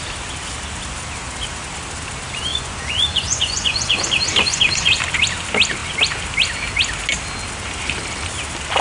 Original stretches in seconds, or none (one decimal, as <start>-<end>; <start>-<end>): 0.0-2.5; 4.0-4.4; 5.0-8.8